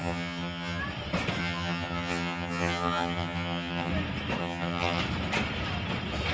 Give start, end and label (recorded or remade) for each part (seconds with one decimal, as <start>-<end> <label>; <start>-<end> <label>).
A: 0.0-0.8 remade; 0.8-1.4 recorded; 1.4-3.9 remade; 3.9-4.4 recorded; 4.4-5.0 remade; 5.0-6.3 recorded